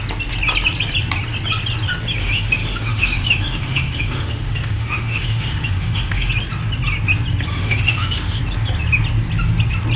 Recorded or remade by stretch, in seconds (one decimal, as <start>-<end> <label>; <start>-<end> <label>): 0.0-2.2 recorded; 2.2-6.3 remade; 6.3-7.5 recorded; 7.5-8.4 remade; 8.4-10.0 recorded